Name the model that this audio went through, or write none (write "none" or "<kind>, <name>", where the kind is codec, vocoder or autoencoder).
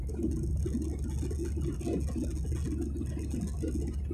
none